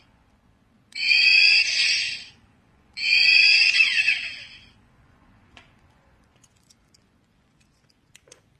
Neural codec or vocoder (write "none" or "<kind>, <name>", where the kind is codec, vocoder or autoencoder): vocoder, Vocos